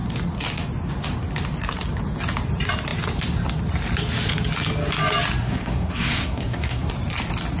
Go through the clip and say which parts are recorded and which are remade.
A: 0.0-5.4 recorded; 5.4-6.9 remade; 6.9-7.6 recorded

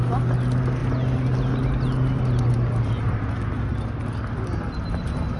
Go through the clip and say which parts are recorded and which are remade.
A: 0.0-5.4 recorded

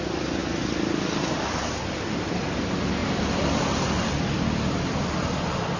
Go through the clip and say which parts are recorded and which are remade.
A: 0.0-5.8 recorded

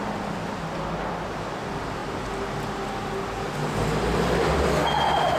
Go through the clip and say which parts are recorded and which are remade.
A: 0.0-5.4 recorded

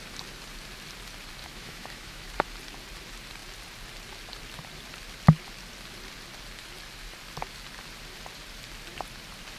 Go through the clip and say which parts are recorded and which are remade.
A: 0.0-1.4 recorded; 1.4-2.3 remade; 2.3-9.6 recorded

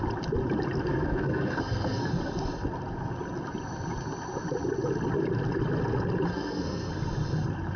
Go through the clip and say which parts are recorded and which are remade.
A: 0.0-0.8 recorded; 0.8-2.1 remade; 2.1-6.3 recorded; 6.3-6.9 remade; 6.9-7.8 recorded

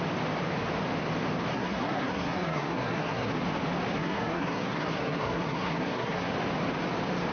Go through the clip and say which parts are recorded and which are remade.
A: 0.0-1.5 recorded; 1.5-3.3 remade; 3.3-3.9 recorded; 3.9-6.3 remade; 6.3-7.3 recorded